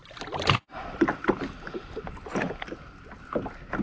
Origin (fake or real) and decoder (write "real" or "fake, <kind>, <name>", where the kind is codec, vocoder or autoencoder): real